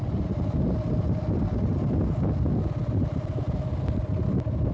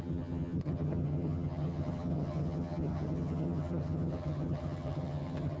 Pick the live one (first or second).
first